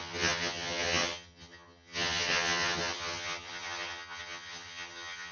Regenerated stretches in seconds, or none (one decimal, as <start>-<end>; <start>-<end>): 0.0-5.3